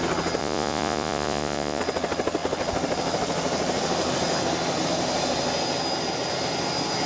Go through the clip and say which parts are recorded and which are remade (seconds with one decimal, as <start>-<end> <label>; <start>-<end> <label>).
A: 0.0-0.4 recorded; 0.4-1.8 remade; 1.8-7.1 recorded